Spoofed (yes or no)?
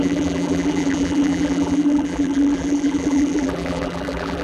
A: yes